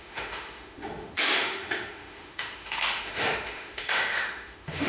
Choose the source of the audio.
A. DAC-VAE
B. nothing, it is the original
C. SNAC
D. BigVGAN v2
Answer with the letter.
A